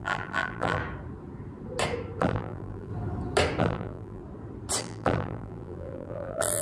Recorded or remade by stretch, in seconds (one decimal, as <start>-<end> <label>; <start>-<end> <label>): 0.0-0.8 remade; 0.8-2.2 recorded; 2.2-2.9 remade; 2.9-3.6 recorded; 3.6-4.2 remade; 4.2-4.8 recorded; 4.8-6.6 remade